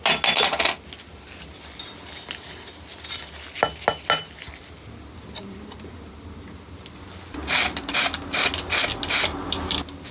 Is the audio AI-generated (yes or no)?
no